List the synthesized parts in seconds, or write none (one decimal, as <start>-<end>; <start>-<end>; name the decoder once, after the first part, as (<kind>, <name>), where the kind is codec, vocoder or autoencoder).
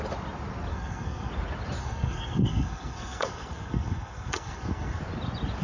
0.7-1.3 (codec, SNAC); 1.8-5.0